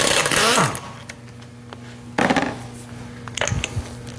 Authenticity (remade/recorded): recorded